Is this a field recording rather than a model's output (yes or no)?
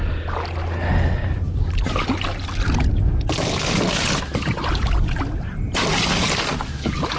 yes